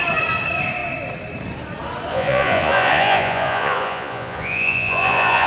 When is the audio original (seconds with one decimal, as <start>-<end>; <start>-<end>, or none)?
0.0-2.1